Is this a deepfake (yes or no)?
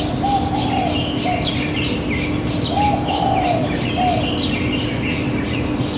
no